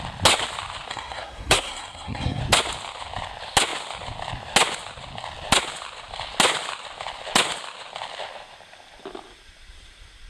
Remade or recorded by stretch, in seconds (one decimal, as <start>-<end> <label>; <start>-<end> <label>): 0.0-0.9 recorded; 0.9-2.4 remade; 2.4-10.3 recorded